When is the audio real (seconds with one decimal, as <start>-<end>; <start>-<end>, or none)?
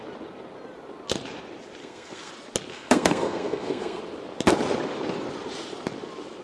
0.0-1.8; 2.3-2.7; 4.0-6.4